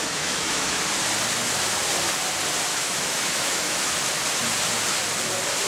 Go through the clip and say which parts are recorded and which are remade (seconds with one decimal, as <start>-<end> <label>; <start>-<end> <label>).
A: 0.0-0.8 remade; 0.8-2.7 recorded; 2.7-3.9 remade; 3.9-5.7 recorded